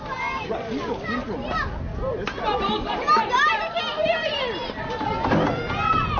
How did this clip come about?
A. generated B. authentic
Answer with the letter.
B